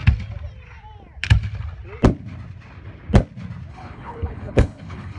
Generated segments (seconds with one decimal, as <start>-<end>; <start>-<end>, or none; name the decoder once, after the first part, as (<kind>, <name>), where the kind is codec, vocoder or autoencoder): 3.7-5.2 (codec, HILCodec)